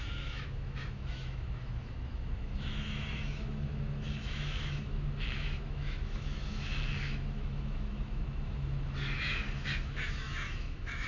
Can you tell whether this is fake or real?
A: fake